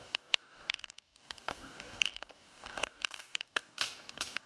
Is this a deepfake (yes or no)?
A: yes